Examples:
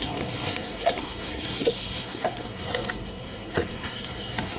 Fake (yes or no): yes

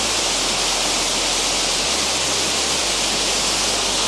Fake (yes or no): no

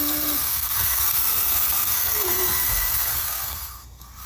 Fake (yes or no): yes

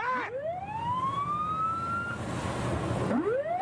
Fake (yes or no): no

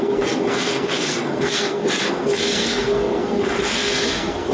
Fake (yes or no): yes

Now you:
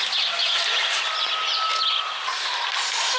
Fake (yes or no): no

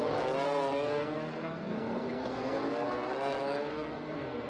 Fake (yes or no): yes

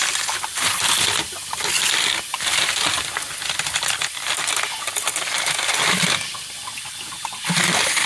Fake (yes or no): no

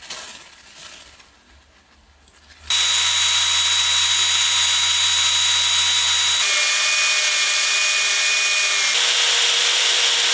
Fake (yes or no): no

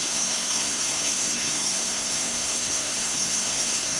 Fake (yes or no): yes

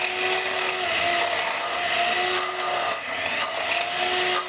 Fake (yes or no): no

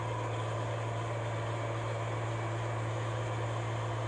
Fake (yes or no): no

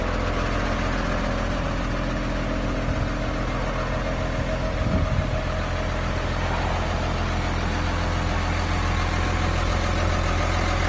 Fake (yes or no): no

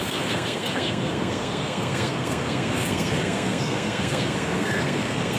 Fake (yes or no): yes